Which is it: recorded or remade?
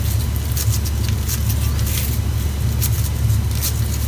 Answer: recorded